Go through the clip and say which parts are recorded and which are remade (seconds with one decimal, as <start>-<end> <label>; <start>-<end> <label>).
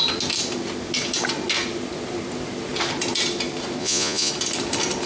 0.0-3.8 recorded; 3.8-4.3 remade; 4.3-5.1 recorded